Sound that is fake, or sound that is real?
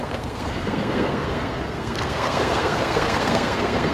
fake